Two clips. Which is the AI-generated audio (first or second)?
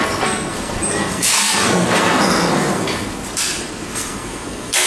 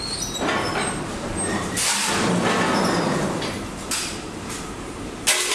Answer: first